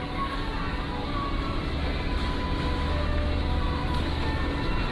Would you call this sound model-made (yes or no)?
no